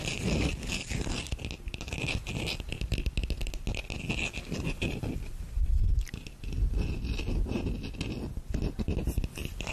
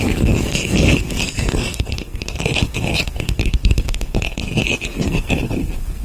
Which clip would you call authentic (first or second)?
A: first